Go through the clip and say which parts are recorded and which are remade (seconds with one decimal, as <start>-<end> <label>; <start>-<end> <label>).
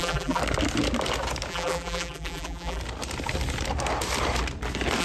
0.0-0.4 remade; 0.4-1.5 recorded; 1.5-2.8 remade; 2.8-5.0 recorded